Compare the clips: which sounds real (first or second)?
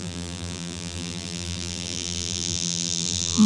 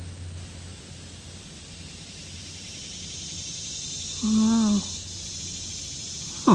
second